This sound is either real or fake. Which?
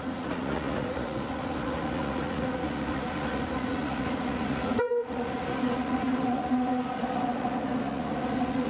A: fake